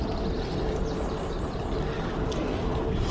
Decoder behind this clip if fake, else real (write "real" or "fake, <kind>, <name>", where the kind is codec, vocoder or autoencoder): real